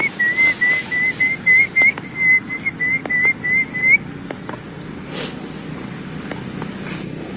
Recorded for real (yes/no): yes